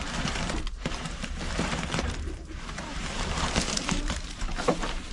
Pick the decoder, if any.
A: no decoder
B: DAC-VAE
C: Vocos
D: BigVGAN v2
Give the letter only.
D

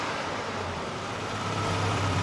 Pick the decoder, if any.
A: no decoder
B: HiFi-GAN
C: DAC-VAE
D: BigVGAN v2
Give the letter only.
D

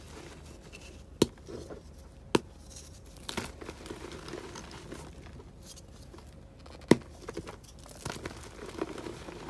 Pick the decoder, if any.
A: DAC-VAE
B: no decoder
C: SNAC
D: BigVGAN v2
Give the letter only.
B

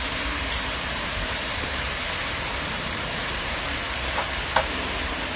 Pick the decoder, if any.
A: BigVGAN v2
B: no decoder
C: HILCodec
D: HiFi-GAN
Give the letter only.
A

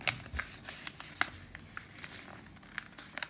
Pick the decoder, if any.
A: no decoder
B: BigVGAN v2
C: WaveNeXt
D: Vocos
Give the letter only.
A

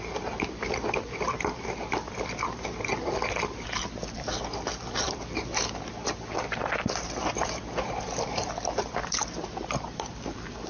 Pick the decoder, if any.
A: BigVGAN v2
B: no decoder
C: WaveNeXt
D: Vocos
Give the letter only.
A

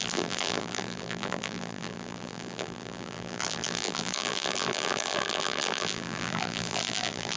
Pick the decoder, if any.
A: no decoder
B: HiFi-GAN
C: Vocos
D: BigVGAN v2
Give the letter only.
D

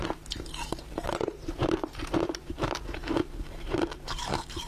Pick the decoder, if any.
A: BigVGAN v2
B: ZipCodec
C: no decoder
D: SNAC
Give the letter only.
A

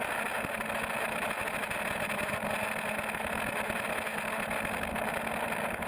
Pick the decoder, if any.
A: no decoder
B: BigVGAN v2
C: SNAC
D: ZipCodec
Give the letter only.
A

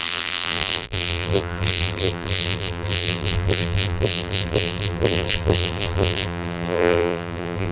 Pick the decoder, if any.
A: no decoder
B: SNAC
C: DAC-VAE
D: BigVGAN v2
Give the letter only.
D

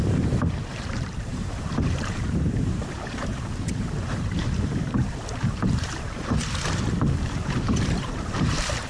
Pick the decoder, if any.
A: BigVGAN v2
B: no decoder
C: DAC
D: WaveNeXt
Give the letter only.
A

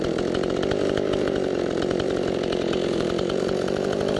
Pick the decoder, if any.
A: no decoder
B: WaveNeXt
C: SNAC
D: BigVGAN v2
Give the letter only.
D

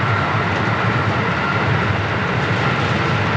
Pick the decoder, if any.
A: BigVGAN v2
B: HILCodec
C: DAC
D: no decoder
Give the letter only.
D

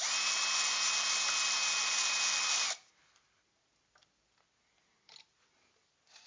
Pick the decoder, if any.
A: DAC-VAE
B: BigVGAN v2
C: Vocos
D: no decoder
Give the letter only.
D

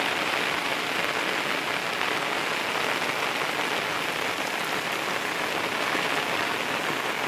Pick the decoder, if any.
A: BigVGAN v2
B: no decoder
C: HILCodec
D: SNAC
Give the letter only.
B